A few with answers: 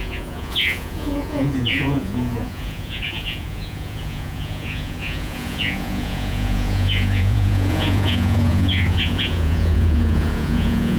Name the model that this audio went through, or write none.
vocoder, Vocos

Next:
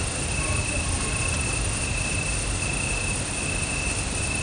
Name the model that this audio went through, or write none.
none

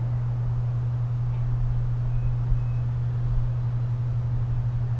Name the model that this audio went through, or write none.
none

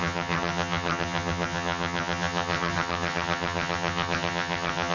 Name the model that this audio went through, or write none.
vocoder, HiFi-GAN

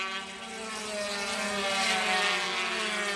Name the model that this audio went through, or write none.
none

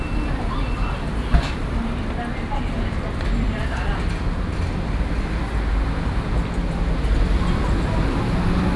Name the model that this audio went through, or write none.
none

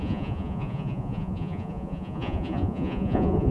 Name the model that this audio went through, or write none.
vocoder, Vocos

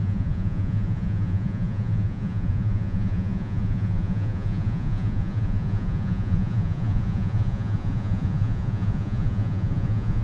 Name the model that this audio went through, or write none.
vocoder, Vocos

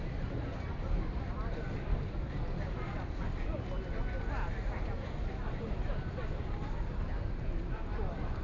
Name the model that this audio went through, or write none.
none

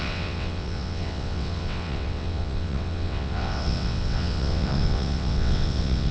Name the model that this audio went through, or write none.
vocoder, WaveNeXt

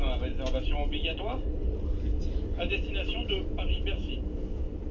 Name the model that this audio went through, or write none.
none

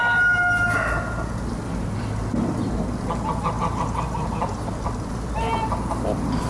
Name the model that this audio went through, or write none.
none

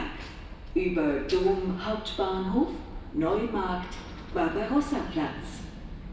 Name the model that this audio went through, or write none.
none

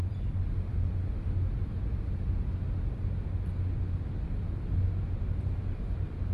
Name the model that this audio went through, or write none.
none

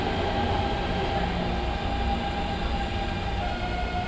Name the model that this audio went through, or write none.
none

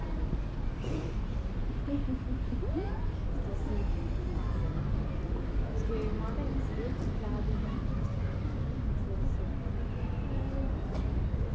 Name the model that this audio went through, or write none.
none